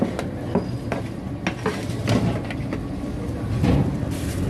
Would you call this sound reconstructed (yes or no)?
no